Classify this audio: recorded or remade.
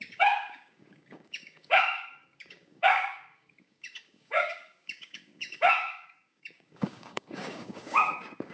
remade